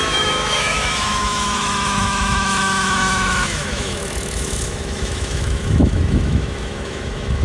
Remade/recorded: remade